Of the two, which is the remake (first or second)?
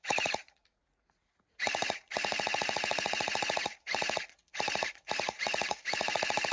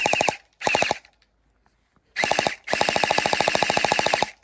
first